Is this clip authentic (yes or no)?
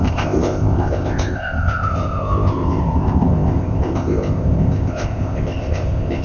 no